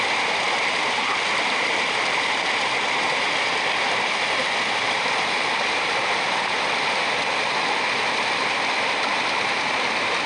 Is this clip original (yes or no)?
yes